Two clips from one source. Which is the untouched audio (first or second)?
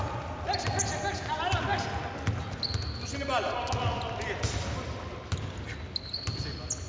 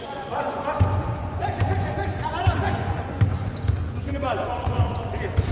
first